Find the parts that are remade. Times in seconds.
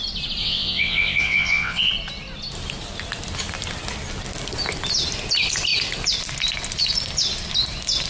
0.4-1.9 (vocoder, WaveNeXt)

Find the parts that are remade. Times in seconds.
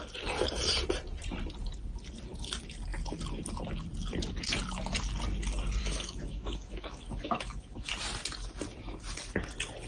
5.8-7.9 (autoencoder, DAC-VAE)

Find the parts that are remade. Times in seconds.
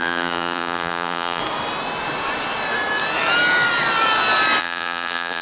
0.0-1.4 (vocoder, BigVGAN v2); 4.6-5.4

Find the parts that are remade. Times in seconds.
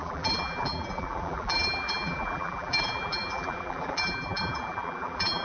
0.0-5.4 (vocoder, BigVGAN v2)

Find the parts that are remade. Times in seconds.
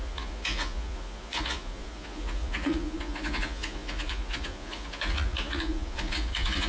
0.0-6.7 (vocoder, Vocos)